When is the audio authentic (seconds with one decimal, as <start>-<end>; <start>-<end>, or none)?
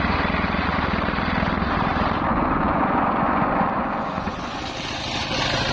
0.0-2.3; 4.6-5.7